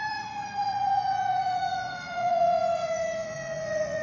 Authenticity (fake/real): fake